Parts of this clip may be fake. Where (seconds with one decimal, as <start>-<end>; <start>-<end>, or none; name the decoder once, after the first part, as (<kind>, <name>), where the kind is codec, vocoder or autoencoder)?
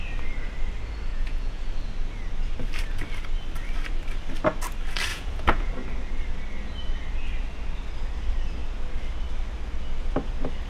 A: 1.1-1.6 (vocoder, Vocos); 5.1-5.7